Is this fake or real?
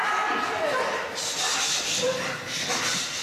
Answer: real